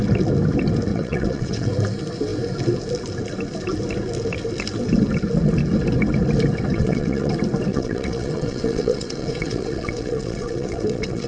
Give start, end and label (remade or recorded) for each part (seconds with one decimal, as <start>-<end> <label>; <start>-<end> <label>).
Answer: 0.0-0.9 recorded; 0.9-1.7 remade; 1.7-6.7 recorded; 6.7-7.3 remade; 7.3-7.7 recorded; 7.7-11.3 remade